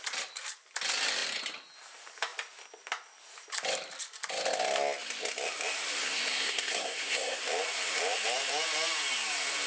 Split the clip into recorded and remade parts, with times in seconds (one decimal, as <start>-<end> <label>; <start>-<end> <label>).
0.0-6.0 recorded; 6.0-7.4 remade; 7.4-9.7 recorded